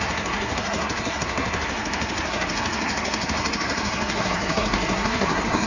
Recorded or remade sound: remade